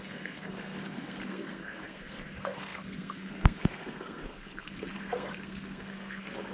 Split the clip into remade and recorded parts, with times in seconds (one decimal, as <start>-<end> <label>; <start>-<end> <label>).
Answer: 0.0-6.5 remade